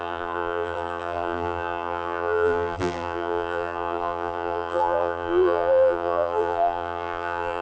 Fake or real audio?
fake